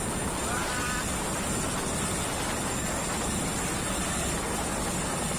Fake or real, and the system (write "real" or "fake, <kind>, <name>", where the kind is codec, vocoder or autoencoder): real